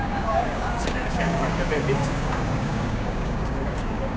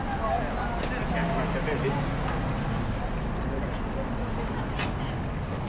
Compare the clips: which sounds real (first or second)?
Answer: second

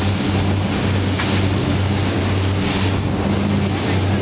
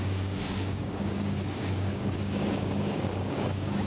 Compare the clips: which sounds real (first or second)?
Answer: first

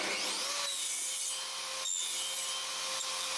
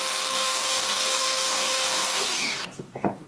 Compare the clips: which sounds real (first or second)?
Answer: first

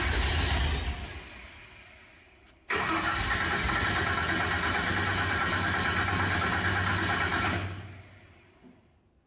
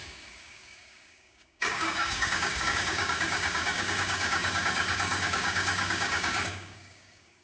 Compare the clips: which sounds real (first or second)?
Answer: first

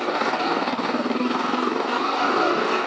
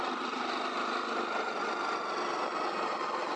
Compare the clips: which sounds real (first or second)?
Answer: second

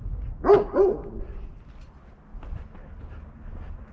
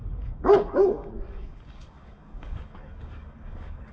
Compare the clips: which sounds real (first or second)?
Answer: first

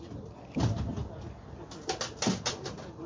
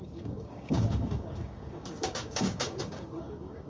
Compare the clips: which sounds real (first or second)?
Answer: first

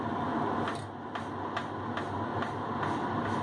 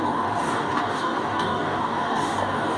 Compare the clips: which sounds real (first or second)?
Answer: first